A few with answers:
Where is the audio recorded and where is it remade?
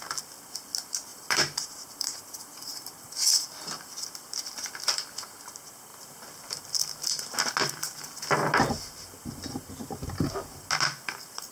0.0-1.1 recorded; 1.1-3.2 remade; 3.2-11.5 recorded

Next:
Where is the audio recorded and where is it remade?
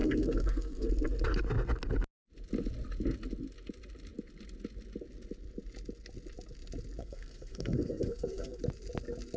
0.0-0.9 remade; 0.9-7.0 recorded; 7.0-8.6 remade; 8.6-9.4 recorded